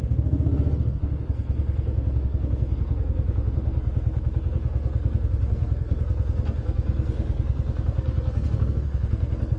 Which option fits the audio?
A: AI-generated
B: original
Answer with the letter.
A